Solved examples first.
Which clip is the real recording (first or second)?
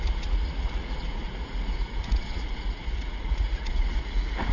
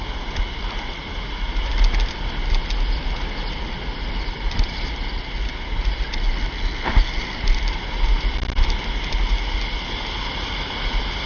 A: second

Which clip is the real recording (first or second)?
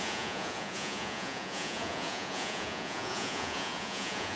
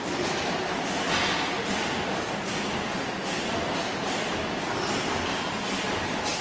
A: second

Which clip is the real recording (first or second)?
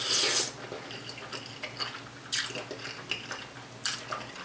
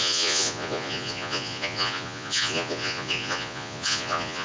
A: first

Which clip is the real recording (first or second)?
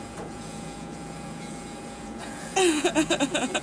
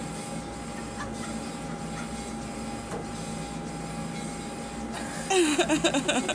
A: second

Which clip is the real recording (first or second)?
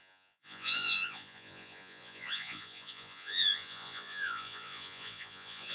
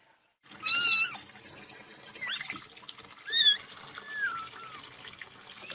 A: second